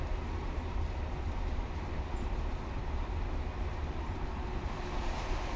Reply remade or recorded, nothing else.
recorded